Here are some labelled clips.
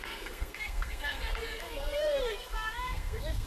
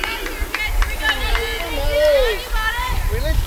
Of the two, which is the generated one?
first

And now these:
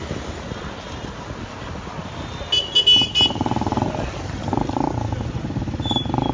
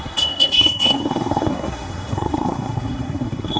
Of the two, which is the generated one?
second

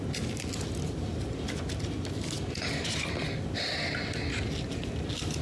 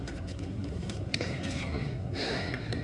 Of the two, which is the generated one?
second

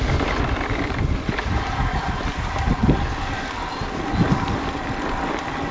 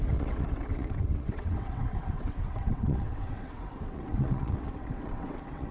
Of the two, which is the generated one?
second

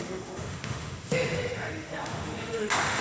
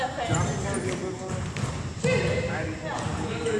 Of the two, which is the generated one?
first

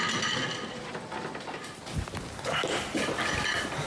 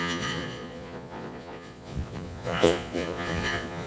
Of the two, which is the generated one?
second